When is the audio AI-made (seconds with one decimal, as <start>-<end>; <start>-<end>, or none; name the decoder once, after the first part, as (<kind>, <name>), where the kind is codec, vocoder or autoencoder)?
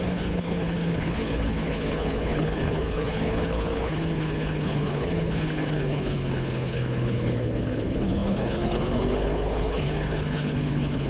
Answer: 0.0-11.1 (codec, HILCodec)